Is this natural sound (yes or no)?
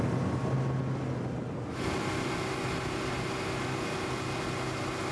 yes